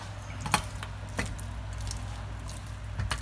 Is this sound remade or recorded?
recorded